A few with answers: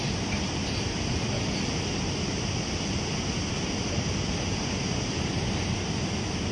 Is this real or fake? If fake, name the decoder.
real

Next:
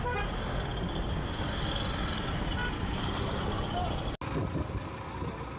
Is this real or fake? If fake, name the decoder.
real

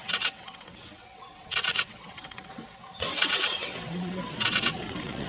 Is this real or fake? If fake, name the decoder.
fake, vocoder, WaveNeXt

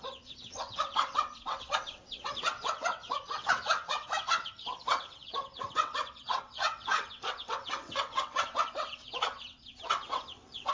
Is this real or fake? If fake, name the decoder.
fake, vocoder, WaveNeXt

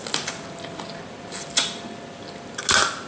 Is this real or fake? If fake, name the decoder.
real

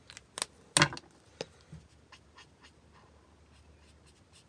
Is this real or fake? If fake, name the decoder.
real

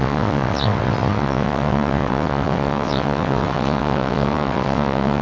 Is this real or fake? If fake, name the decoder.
fake, vocoder, WaveNeXt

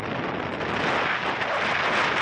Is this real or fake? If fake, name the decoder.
real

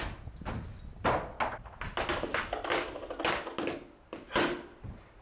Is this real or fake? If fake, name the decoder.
real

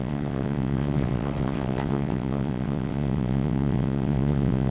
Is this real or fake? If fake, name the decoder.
fake, vocoder, WaveNeXt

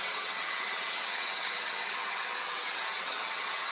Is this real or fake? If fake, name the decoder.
fake, vocoder, WaveNeXt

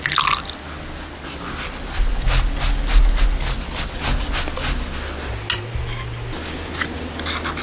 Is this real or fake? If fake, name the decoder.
real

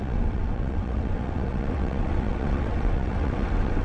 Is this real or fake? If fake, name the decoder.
fake, vocoder, WaveNeXt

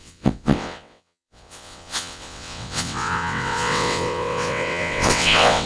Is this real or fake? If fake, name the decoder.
fake, vocoder, WaveNeXt